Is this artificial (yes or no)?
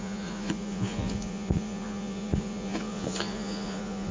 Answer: yes